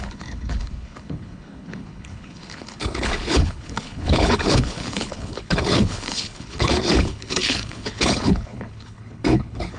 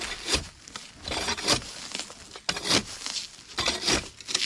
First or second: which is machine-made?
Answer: first